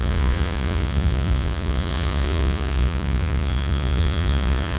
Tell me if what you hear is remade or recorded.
remade